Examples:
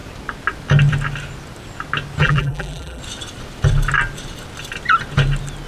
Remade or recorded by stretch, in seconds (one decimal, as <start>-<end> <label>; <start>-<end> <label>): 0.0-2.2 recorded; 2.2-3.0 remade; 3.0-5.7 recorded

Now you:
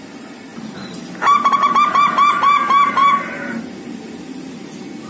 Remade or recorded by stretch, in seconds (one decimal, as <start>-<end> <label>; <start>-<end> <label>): 0.0-0.5 recorded; 0.5-3.6 remade; 3.6-5.1 recorded

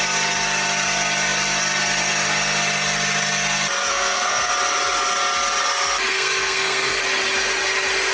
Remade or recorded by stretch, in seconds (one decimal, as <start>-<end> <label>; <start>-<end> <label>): 0.0-3.9 recorded; 3.9-4.5 remade; 4.5-6.1 recorded; 6.1-7.0 remade; 7.0-8.1 recorded

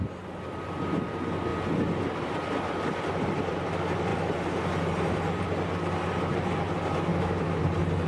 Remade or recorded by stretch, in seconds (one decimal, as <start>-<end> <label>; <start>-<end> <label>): 0.0-7.1 recorded; 7.1-7.6 remade; 7.6-8.1 recorded